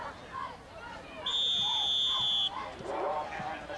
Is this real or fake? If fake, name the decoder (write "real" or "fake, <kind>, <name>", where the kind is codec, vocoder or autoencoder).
real